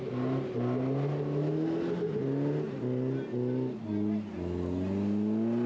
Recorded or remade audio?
recorded